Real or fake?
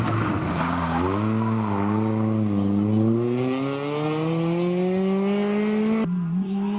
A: real